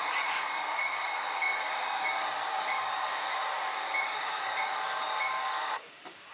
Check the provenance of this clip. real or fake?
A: fake